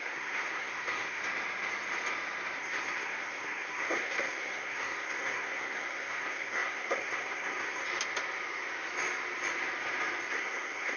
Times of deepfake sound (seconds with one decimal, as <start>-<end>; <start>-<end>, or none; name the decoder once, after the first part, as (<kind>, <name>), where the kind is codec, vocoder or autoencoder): 0.0-1.2 (codec, SNAC); 2.6-7.8; 10.3-11.0